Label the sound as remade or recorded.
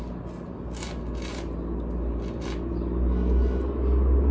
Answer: recorded